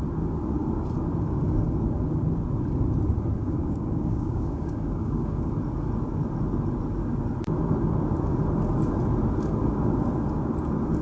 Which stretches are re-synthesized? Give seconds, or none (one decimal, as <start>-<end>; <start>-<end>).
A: 3.4-5.5